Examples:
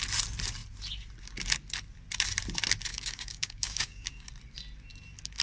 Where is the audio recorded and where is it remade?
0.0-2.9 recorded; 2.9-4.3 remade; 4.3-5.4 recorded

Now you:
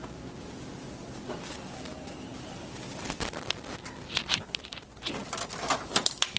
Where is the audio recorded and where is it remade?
0.0-6.4 recorded

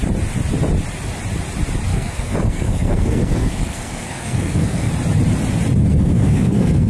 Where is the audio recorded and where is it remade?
0.0-1.9 recorded; 1.9-4.9 remade; 4.9-5.9 recorded; 5.9-6.9 remade

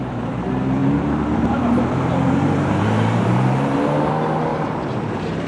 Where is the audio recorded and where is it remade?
0.0-0.8 recorded; 0.8-4.1 remade; 4.1-4.5 recorded; 4.5-5.1 remade; 5.1-5.5 recorded

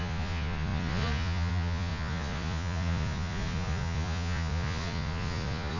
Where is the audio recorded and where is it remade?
0.0-5.8 remade

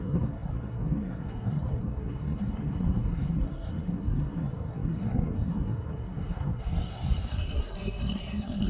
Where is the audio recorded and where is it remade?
0.0-8.7 remade